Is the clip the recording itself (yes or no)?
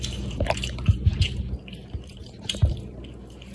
no